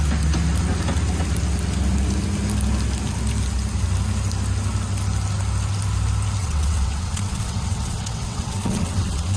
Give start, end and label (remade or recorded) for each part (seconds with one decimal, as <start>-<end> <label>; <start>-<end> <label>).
0.0-6.4 recorded; 6.4-9.4 remade